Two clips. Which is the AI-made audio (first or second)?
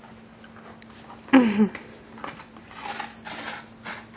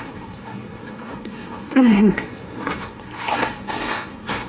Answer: second